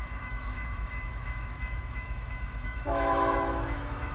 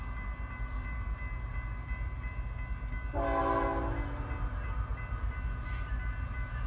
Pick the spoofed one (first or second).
first